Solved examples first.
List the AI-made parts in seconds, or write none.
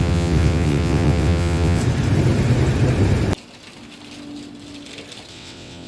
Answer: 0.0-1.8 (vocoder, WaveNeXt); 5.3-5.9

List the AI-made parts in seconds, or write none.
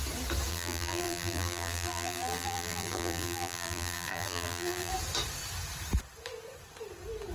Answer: 0.5-4.9 (vocoder, BigVGAN v2)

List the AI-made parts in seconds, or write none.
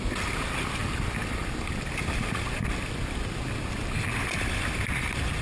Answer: none